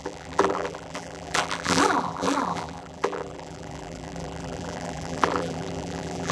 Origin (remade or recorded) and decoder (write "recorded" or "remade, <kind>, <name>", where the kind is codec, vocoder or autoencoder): remade, vocoder, BigVGAN v2